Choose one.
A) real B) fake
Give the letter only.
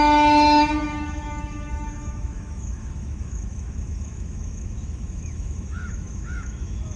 B